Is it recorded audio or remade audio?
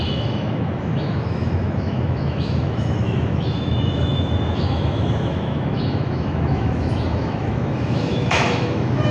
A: remade